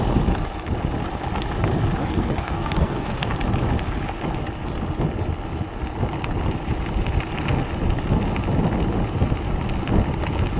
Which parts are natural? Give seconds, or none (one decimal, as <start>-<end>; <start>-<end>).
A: 0.0-2.0; 3.3-10.6